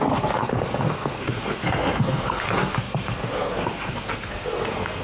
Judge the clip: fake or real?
fake